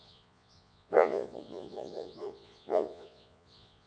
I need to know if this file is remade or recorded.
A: remade